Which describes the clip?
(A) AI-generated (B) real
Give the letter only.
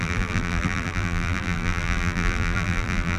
A